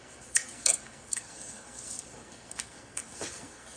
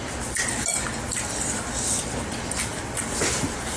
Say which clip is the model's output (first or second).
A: first